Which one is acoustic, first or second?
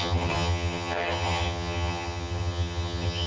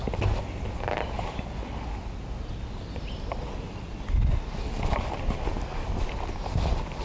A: second